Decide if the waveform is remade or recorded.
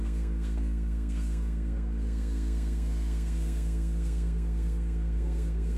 remade